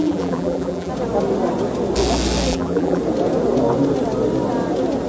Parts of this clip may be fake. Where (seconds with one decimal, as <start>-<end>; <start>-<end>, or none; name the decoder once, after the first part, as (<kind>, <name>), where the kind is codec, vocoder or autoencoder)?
0.0-0.9 (vocoder, BigVGAN v2); 2.5-3.0